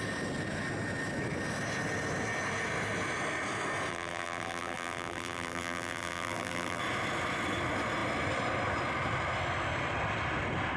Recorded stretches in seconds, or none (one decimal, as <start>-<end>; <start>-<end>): 0.0-3.9; 6.8-10.8